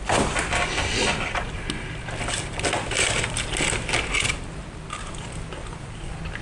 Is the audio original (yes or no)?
yes